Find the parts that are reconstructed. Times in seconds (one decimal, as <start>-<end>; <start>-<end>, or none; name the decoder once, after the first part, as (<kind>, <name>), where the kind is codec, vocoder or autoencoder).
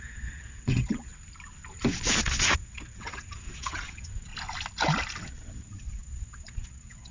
0.0-1.1 (vocoder, WaveNeXt); 2.2-4.3; 5.3-7.1